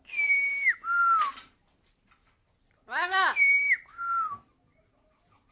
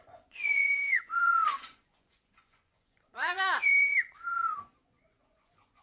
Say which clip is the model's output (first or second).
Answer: second